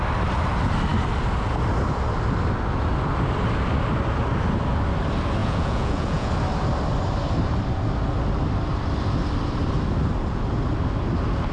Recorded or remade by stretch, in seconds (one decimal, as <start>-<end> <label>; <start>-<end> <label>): 0.0-5.4 recorded; 5.4-6.3 remade; 6.3-11.5 recorded